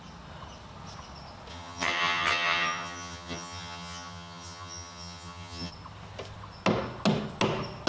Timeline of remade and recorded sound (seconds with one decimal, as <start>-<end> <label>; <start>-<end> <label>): 0.0-1.5 recorded; 1.5-5.7 remade; 5.7-7.9 recorded